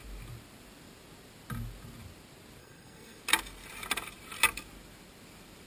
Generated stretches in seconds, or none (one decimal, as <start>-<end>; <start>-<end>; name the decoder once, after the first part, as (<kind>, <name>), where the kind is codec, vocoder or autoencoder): 2.6-3.2 (codec, SNAC)